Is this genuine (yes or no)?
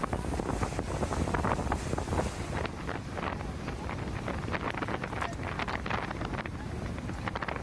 yes